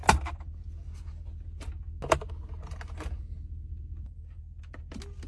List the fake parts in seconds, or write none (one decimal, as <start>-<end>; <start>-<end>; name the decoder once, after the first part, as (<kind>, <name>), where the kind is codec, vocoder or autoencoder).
none